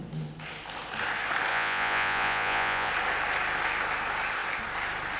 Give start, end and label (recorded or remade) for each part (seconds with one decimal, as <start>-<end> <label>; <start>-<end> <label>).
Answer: 0.0-1.5 recorded; 1.5-2.9 remade; 2.9-5.2 recorded